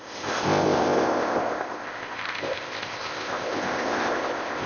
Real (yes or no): no